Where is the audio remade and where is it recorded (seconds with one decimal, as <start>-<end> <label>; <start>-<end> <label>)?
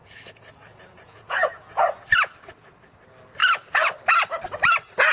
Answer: 0.0-1.8 remade; 1.8-5.1 recorded